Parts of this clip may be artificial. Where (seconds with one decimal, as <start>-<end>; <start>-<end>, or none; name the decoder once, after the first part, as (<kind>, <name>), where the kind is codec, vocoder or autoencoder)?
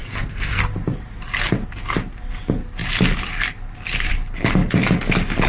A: 0.0-0.6 (codec, SNAC)